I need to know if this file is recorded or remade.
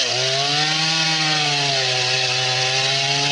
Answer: recorded